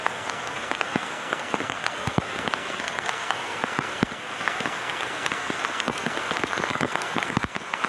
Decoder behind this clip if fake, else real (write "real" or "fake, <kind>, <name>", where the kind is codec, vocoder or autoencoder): fake, codec, SNAC